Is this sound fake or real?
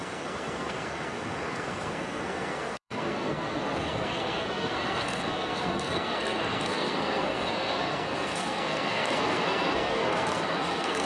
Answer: fake